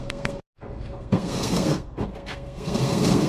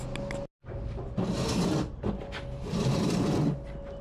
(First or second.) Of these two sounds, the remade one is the first